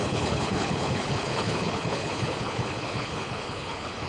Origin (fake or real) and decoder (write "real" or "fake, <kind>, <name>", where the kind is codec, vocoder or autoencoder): fake, codec, HILCodec